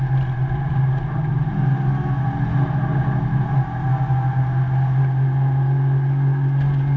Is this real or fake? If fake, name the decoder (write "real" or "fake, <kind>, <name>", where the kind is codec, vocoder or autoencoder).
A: real